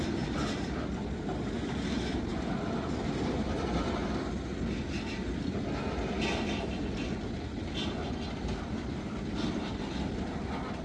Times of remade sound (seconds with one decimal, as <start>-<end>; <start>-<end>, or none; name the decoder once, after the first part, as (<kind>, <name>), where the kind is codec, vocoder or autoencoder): none